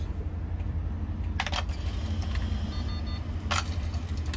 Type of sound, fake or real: real